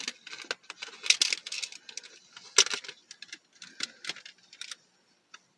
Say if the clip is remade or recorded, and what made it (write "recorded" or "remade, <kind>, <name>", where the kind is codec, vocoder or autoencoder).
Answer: recorded